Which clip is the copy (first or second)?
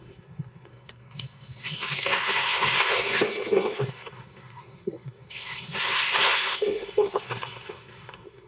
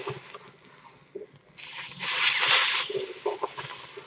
first